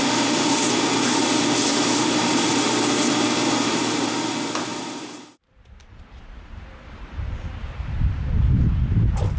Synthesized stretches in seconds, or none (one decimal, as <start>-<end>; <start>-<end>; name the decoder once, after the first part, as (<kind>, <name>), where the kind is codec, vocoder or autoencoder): 1.7-3.1 (vocoder, BigVGAN v2); 4.7-8.3